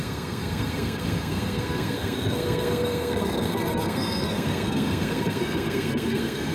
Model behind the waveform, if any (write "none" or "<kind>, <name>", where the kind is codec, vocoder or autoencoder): codec, SNAC